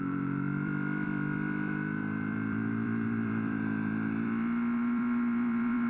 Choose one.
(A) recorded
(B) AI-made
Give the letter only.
B